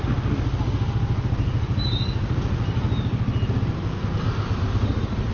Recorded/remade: recorded